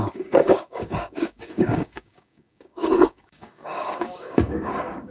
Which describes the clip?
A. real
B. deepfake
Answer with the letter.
B